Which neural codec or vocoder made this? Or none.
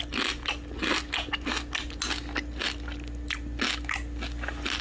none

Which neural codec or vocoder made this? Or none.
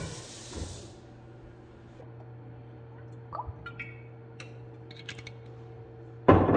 none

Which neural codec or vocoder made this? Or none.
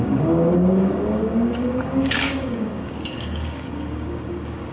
codec, DAC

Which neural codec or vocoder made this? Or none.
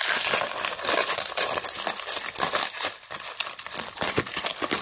none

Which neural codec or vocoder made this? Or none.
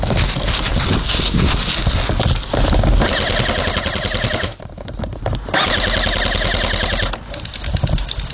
none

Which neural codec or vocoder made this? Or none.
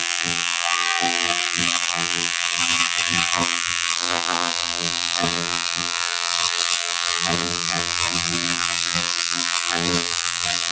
vocoder, BigVGAN v2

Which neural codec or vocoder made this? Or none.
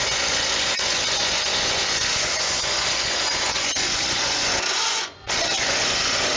vocoder, Vocos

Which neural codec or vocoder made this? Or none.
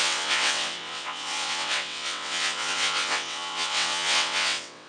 vocoder, WaveNeXt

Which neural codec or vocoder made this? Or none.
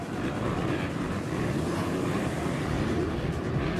vocoder, BigVGAN v2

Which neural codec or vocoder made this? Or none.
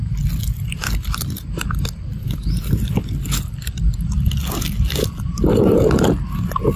none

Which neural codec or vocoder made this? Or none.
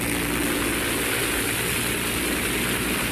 none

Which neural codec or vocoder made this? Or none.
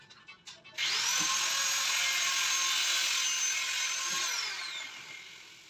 none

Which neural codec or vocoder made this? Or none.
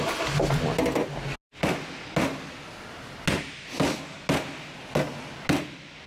none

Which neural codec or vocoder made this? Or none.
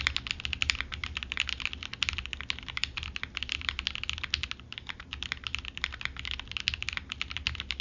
none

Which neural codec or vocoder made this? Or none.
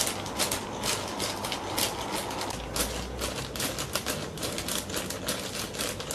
none